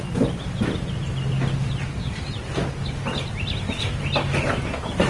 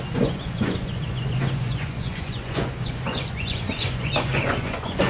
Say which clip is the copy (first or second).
second